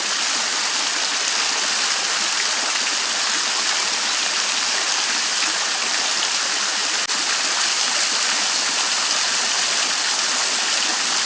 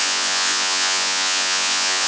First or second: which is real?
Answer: first